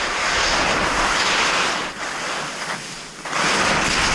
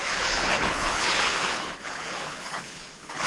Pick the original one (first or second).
first